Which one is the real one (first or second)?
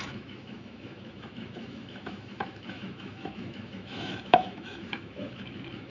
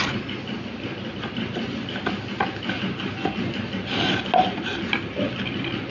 second